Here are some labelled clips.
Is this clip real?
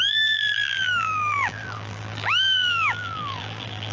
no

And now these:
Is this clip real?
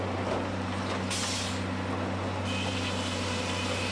yes